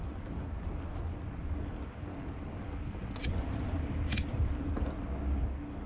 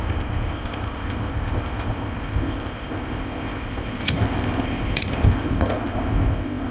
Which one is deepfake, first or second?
second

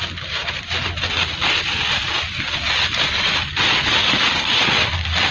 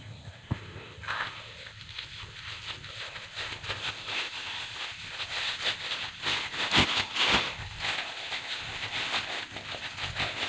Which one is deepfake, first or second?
second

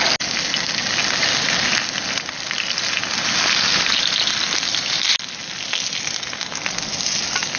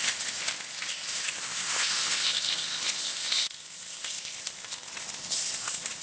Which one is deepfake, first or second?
second